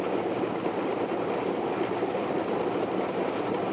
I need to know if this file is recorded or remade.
recorded